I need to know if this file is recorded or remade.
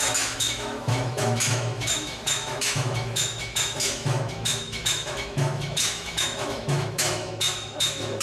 remade